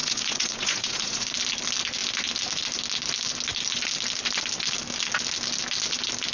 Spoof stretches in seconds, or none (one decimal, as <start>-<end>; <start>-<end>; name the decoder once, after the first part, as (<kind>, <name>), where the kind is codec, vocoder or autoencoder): 0.0-1.3 (vocoder, Vocos)